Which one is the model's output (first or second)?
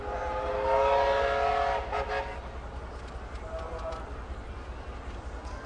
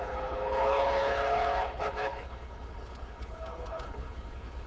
second